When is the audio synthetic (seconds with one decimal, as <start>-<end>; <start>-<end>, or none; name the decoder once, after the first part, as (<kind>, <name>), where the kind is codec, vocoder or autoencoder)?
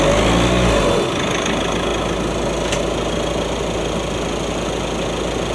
none